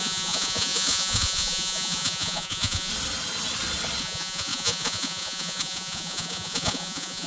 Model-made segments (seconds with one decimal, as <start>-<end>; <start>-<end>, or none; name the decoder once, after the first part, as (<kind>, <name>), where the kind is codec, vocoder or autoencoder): 0.0-2.9 (vocoder, Vocos); 4.0-7.3